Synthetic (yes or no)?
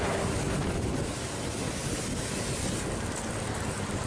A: no